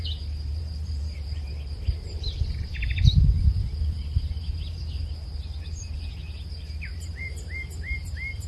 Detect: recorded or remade remade